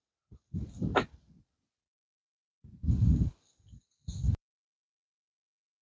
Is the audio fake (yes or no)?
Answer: no